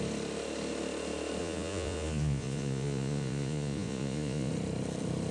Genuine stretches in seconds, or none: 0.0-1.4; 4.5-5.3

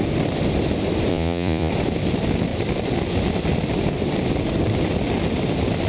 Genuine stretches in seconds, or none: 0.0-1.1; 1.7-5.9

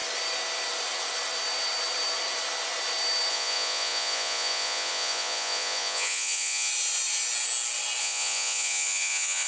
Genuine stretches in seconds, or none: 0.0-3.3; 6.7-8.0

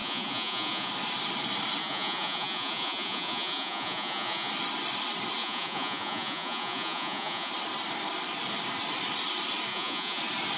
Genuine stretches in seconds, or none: 0.9-1.8; 4.5-5.4; 7.5-9.7; 10.2-10.6

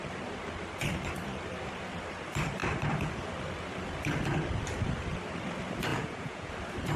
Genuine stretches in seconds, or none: 0.0-5.9; 6.5-7.0